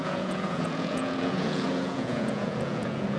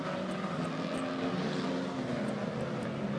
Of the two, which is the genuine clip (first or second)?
second